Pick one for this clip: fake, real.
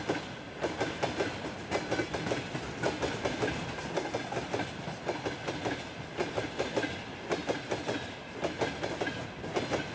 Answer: real